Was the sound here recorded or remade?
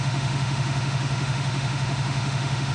remade